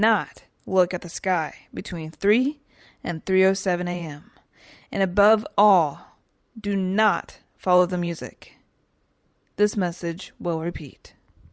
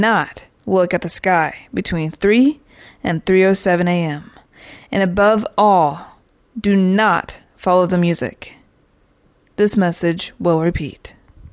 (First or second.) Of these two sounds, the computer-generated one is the first